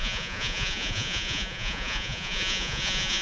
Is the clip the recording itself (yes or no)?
no